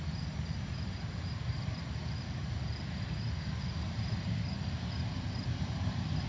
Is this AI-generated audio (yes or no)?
yes